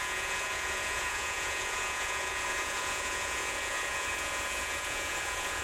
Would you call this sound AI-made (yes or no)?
yes